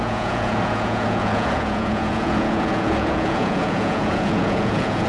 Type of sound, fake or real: fake